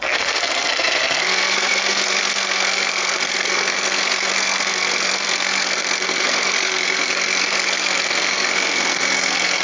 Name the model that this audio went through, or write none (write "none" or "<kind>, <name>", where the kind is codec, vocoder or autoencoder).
codec, SNAC